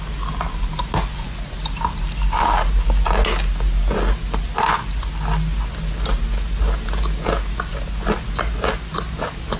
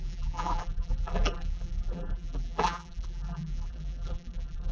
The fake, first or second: second